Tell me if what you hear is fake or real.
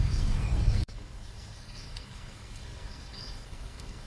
fake